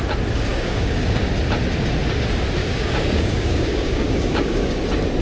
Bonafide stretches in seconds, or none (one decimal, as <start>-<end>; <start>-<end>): 0.0-0.5; 1.3-2.6; 4.8-5.2